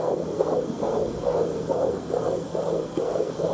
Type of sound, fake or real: fake